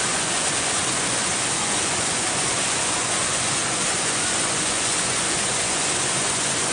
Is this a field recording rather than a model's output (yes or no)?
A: no